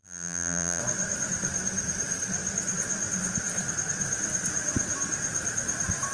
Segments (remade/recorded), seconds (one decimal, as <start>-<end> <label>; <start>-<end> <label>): 0.0-0.8 remade; 0.8-6.1 recorded